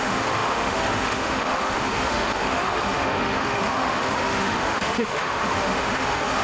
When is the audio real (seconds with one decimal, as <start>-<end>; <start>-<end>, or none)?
none